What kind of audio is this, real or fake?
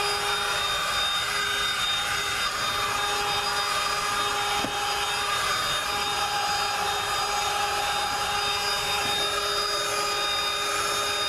real